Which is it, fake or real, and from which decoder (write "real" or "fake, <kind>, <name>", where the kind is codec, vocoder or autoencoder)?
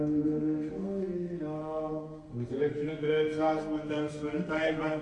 fake, codec, SNAC